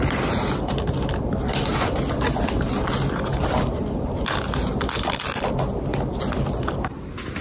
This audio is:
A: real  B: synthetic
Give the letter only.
A